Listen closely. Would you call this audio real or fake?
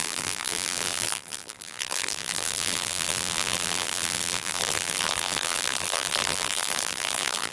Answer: fake